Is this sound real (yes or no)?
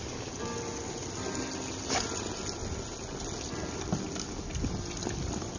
yes